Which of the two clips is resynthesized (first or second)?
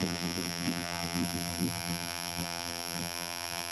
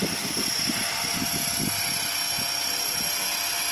first